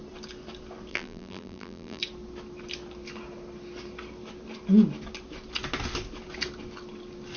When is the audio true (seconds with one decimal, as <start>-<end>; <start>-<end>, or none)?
0.0-0.9; 2.0-7.4